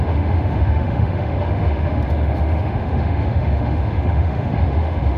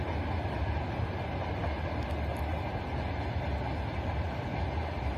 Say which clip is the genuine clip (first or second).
second